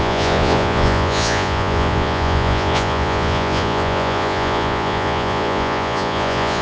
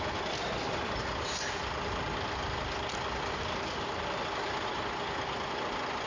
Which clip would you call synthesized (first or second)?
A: first